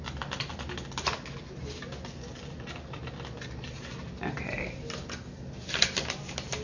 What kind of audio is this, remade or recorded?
recorded